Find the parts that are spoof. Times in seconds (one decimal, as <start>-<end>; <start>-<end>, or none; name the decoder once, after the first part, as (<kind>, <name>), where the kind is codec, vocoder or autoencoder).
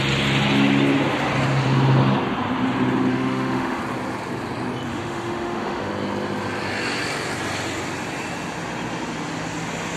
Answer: 3.1-3.8 (autoencoder, DAC-VAE); 4.9-5.9